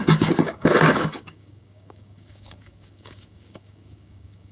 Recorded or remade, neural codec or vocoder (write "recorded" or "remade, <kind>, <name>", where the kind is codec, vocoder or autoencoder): remade, codec, DAC